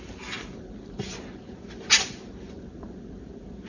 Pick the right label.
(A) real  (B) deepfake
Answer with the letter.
A